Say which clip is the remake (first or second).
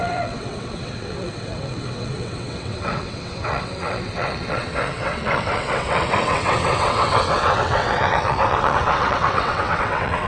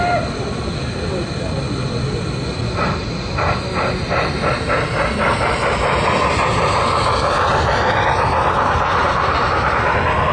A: first